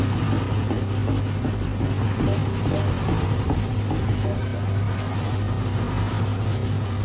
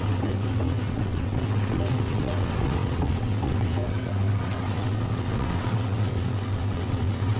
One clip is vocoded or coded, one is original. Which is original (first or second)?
first